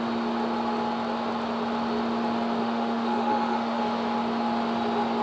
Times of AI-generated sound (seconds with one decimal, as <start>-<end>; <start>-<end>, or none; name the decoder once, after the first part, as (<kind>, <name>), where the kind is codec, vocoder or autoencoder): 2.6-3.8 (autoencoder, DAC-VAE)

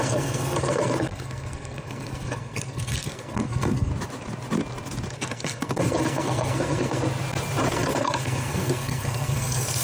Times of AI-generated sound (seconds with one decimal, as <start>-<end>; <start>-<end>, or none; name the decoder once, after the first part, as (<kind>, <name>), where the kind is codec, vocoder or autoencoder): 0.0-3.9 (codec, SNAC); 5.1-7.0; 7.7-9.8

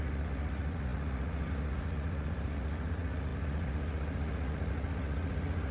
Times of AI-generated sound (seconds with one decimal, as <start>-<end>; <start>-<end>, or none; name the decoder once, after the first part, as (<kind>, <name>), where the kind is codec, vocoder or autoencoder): 0.0-5.7 (vocoder, Vocos)

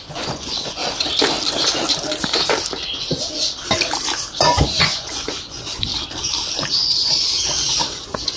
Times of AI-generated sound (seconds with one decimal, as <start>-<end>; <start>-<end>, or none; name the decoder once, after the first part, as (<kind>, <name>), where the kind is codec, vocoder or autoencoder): 0.0-0.8 (vocoder, Vocos); 4.4-5.9; 8.0-8.4